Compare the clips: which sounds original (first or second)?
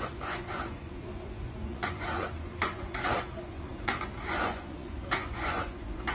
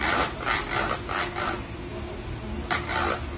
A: second